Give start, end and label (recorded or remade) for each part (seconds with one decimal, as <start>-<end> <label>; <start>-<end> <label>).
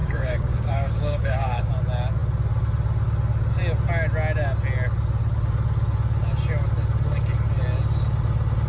0.0-1.7 remade; 1.7-8.7 recorded